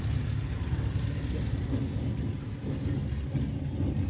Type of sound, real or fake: real